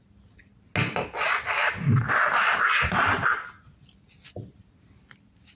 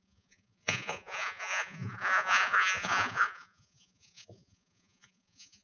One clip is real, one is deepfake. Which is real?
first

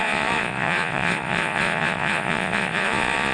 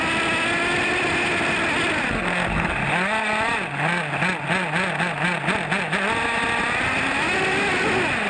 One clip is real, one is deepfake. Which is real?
second